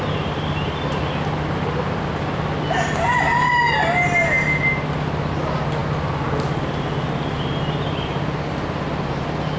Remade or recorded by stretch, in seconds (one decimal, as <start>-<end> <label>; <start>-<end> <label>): 0.0-9.6 recorded